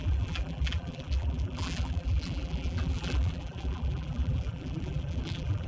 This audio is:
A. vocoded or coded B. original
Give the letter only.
A